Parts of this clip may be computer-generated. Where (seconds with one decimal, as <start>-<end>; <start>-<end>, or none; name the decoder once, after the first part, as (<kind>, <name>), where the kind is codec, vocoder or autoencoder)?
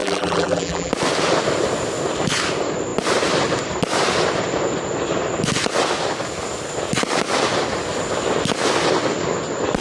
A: 0.0-0.9 (vocoder, BigVGAN v2)